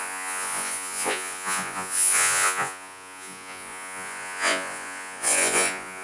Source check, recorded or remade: remade